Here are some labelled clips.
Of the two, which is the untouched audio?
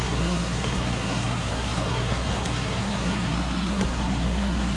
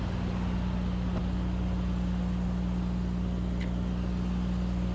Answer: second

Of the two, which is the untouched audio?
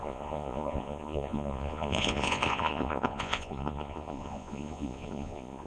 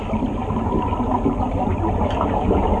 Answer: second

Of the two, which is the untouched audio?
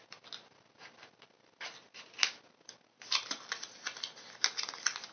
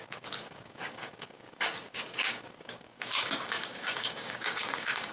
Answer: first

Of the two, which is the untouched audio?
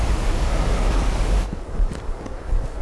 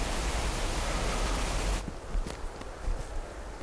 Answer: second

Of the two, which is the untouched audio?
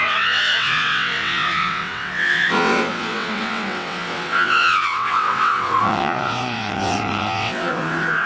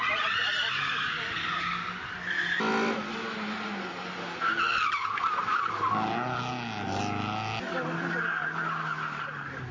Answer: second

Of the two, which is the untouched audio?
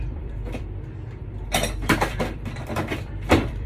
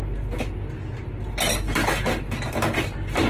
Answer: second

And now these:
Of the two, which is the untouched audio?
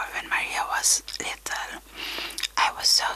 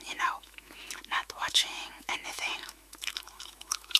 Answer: first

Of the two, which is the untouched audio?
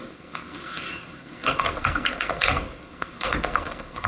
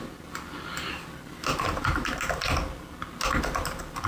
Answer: second